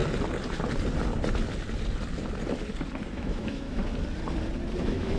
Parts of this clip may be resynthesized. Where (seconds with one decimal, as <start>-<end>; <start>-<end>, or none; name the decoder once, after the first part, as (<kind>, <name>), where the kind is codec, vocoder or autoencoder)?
3.1-3.8 (autoencoder, DAC-VAE); 4.8-5.2